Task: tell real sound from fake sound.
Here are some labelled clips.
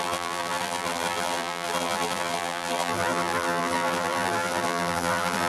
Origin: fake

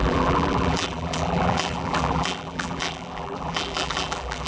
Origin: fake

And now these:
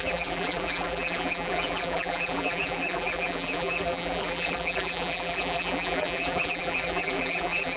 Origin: fake